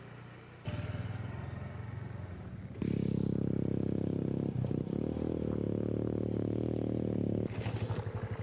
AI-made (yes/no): no